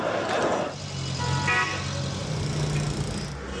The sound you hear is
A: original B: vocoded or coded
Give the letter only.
A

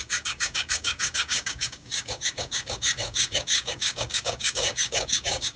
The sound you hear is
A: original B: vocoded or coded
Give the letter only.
B